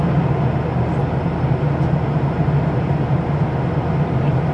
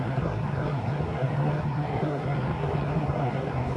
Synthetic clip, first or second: second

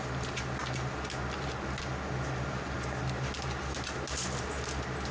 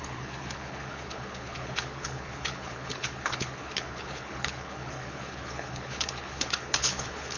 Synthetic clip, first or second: second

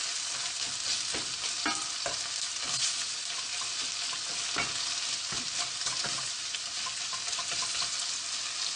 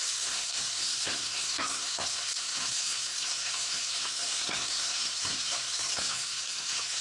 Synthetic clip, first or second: second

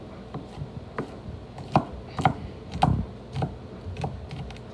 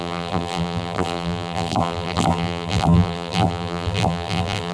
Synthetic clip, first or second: second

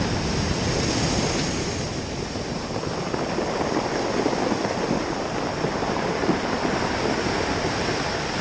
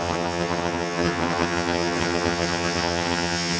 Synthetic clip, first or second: second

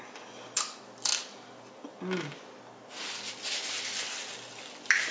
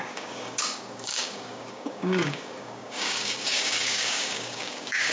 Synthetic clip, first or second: second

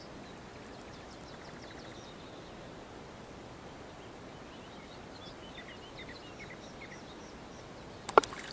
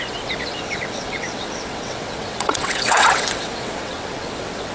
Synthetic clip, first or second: second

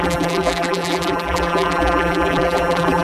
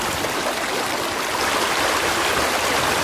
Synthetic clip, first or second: first